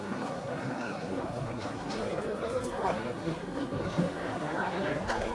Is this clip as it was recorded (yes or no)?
no